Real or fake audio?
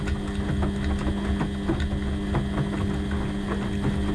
real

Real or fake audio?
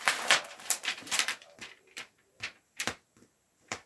fake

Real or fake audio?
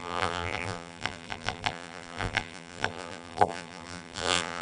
fake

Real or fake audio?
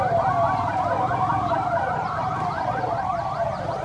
real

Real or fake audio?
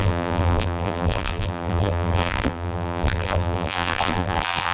fake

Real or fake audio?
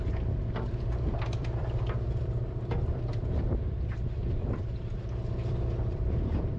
fake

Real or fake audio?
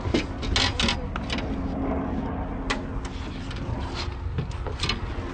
real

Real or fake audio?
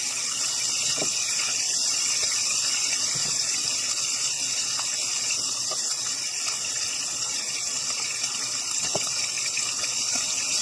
real